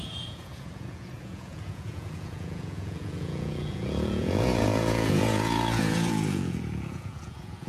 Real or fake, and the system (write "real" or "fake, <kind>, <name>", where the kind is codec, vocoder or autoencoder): fake, vocoder, Vocos